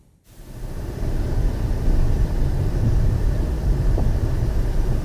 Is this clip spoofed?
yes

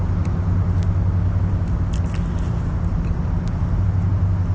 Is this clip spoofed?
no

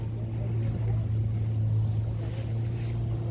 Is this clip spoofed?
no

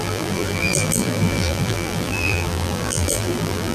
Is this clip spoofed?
yes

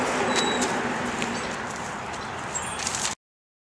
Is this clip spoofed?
no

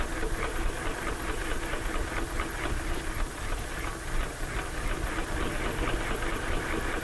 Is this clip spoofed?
no